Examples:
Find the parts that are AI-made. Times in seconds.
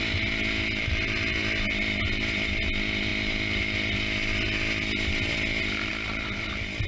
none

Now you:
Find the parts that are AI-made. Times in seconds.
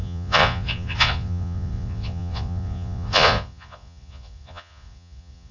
0.0-5.5 (vocoder, Vocos)